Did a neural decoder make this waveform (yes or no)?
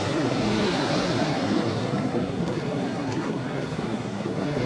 yes